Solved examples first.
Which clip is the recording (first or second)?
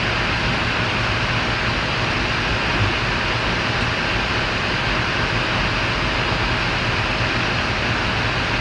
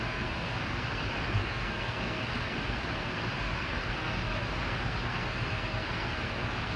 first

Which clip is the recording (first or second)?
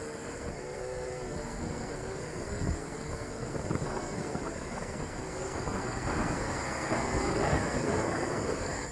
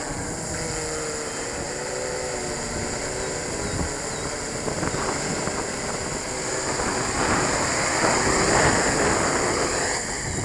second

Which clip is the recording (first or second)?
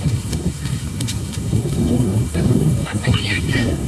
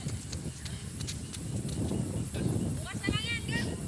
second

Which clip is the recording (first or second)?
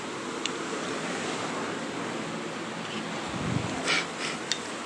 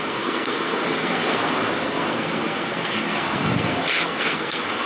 first